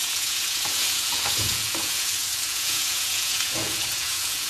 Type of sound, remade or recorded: remade